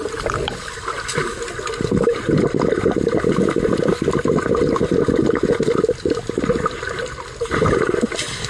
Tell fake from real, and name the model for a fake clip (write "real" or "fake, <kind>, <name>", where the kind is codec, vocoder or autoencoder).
real